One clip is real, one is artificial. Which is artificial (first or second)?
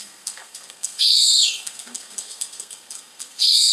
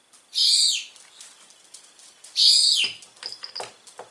first